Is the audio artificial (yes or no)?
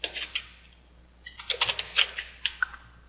no